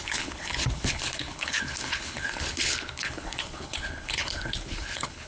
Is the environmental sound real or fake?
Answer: fake